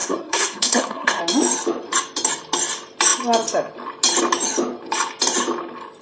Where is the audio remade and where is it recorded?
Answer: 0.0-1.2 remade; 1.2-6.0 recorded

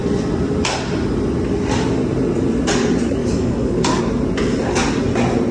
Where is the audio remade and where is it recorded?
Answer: 0.0-3.2 recorded; 3.2-4.0 remade; 4.0-5.5 recorded